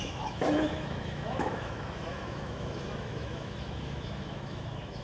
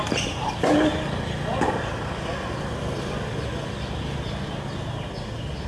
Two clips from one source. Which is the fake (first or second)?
first